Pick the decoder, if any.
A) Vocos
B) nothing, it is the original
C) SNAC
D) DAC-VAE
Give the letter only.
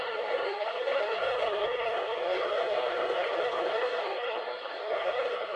C